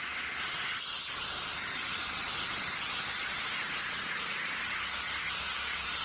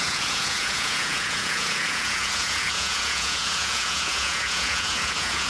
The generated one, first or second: second